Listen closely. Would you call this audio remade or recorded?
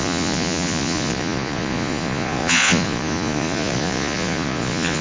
remade